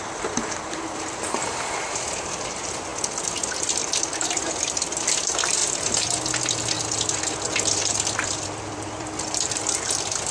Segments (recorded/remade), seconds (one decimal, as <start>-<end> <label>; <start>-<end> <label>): 0.0-2.9 remade; 2.9-4.4 recorded; 4.4-5.6 remade; 5.6-7.8 recorded; 7.8-10.3 remade